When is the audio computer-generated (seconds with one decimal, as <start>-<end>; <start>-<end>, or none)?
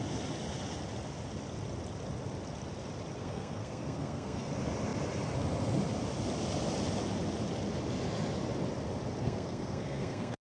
3.2-4.5; 9.2-10.4